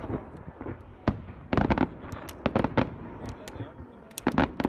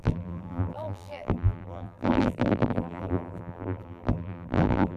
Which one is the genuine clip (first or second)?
first